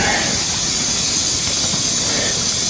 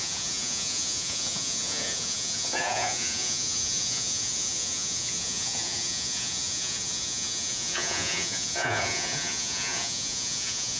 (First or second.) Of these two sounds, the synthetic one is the second